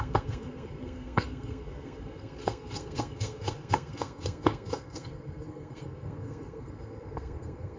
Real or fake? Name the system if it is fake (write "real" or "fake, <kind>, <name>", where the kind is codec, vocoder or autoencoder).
fake, codec, SNAC